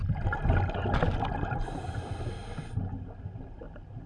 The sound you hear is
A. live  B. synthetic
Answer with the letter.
A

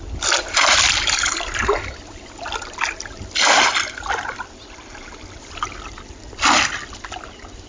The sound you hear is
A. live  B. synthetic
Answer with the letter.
A